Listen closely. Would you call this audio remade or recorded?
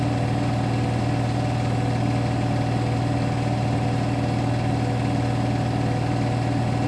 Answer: recorded